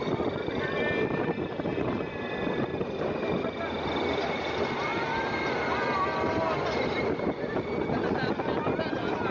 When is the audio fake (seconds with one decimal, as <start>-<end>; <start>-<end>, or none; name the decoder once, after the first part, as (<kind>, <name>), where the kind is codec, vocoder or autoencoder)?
1.7-4.0 (vocoder, BigVGAN v2)